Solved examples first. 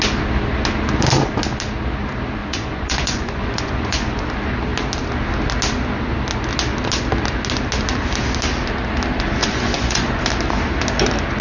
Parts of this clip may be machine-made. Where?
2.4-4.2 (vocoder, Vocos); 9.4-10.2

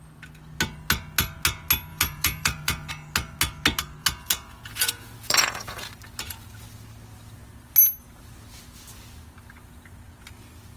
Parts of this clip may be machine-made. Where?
1.9-2.9 (vocoder, Vocos); 4.0-5.9

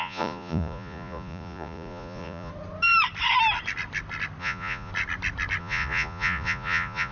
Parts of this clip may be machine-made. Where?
0.0-2.5 (vocoder, Vocos); 4.4-4.9; 5.6-7.1

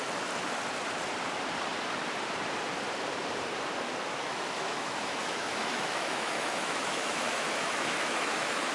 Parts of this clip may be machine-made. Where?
4.3-8.7 (autoencoder, DAC-VAE)

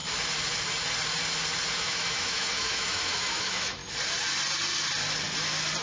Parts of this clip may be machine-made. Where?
1.7-3.8 (autoencoder, DAC-VAE)

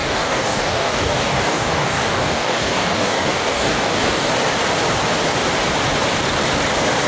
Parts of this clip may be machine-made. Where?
0.0-4.3 (codec, DAC)

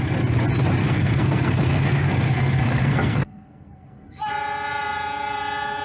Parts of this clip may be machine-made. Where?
0.8-4.3 (codec, SNAC)